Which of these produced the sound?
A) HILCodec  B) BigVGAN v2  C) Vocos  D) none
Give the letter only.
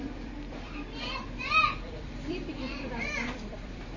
B